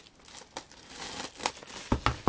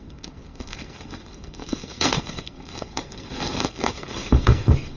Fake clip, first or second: second